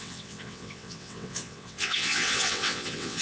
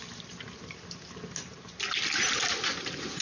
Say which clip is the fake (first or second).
first